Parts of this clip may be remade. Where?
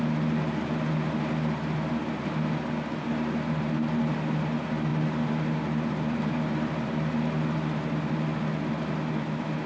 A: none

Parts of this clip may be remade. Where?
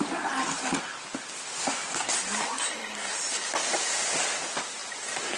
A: none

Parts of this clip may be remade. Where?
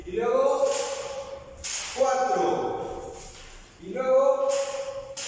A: none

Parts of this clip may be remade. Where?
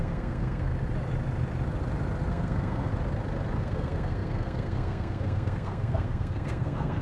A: 0.0-0.7 (codec, SNAC); 2.3-2.9; 3.6-7.0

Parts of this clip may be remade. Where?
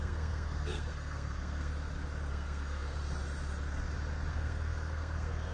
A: 0.0-1.7 (codec, SNAC); 2.3-3.0; 4.3-5.5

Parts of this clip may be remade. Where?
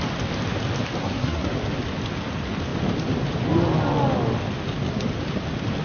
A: 1.0-1.5 (codec, SNAC)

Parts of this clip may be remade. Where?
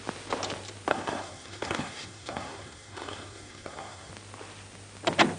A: 0.9-4.1 (codec, SNAC)